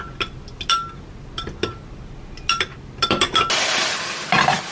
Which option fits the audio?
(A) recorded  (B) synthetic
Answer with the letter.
A